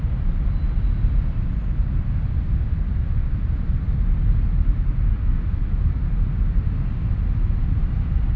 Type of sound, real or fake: real